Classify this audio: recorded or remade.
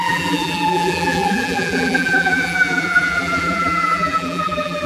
remade